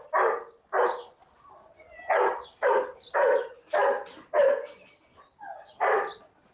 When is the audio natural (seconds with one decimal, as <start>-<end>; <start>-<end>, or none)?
0.0-6.5